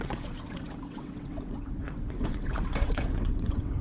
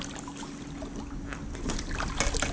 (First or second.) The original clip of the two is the second